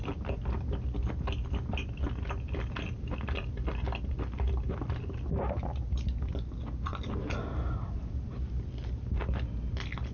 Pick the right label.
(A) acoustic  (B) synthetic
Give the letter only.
A